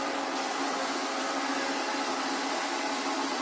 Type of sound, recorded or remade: recorded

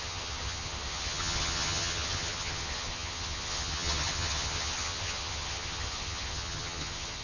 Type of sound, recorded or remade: remade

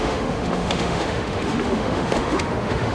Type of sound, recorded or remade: remade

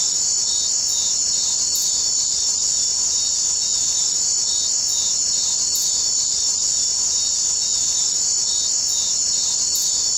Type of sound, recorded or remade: recorded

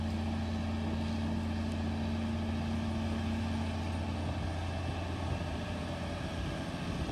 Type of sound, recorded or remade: recorded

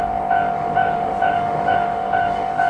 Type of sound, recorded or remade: remade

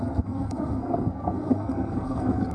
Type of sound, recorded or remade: remade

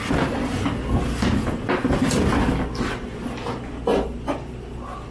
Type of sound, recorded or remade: recorded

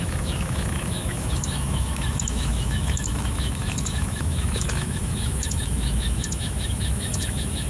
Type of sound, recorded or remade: remade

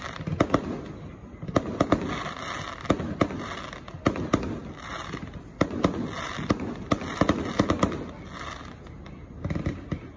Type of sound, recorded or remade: recorded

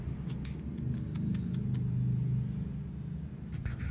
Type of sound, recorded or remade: recorded